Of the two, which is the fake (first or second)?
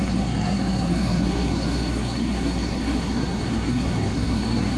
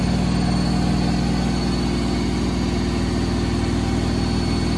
first